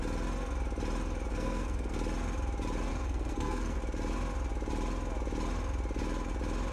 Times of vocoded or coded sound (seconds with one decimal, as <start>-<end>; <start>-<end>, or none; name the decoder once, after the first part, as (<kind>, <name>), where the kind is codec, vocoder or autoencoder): 1.3-2.0 (codec, SNAC); 2.9-3.8